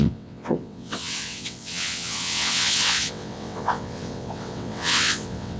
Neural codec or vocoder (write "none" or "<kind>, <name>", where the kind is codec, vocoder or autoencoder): vocoder, WaveNeXt